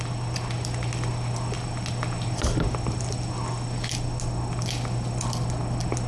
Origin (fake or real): real